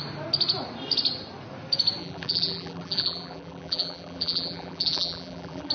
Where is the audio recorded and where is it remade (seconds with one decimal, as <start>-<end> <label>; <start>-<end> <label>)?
0.0-2.0 recorded; 2.0-5.7 remade